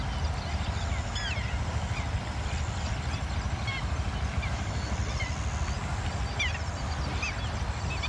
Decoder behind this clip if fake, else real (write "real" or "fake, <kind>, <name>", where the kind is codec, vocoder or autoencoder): real